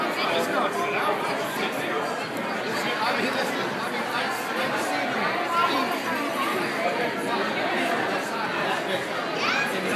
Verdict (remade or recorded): recorded